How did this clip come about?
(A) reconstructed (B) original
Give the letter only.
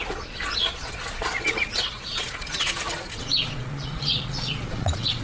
A